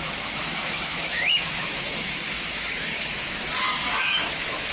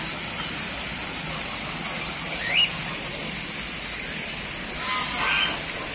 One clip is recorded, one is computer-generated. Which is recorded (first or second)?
second